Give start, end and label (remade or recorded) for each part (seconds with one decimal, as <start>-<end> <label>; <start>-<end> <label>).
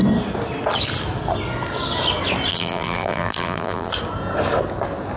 0.0-2.5 recorded; 2.5-3.9 remade; 3.9-5.2 recorded